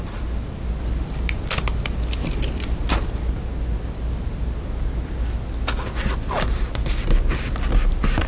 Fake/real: real